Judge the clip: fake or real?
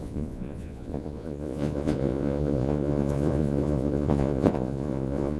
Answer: fake